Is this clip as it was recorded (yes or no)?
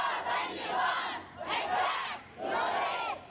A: yes